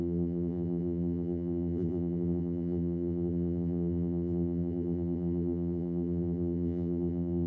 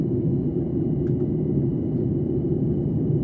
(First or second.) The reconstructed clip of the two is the first